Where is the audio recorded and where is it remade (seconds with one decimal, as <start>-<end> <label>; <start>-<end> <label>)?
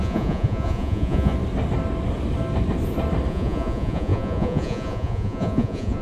0.0-1.3 remade; 1.3-3.3 recorded; 3.3-6.0 remade